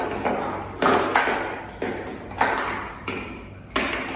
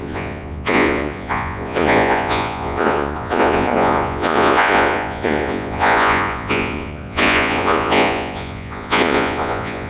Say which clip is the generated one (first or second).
second